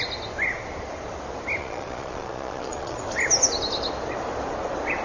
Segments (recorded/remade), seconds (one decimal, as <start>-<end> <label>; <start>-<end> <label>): 0.0-1.6 recorded; 1.6-3.0 remade; 3.0-5.0 recorded